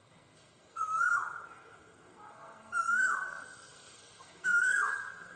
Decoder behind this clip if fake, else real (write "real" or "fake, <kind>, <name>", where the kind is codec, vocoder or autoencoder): fake, codec, SNAC